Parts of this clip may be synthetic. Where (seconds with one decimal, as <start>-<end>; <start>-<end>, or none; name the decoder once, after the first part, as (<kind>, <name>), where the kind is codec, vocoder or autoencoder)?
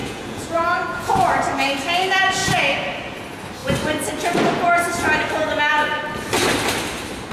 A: 0.0-1.3 (vocoder, Vocos)